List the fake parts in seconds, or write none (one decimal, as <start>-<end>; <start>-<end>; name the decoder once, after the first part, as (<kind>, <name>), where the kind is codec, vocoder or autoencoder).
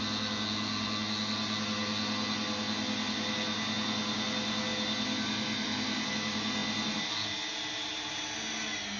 none